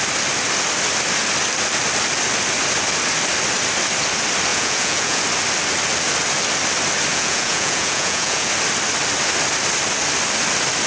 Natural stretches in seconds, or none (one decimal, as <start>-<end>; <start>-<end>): 0.0-4.5; 5.2-7.1; 8.5-10.9